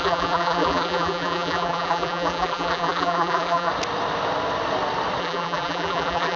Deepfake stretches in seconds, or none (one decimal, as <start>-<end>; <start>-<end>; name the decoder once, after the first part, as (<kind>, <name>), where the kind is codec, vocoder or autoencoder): 0.0-3.7 (vocoder, BigVGAN v2); 5.2-6.4